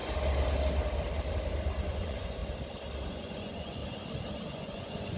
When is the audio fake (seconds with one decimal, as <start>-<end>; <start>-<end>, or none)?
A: 1.9-2.4; 3.1-3.8; 4.5-5.2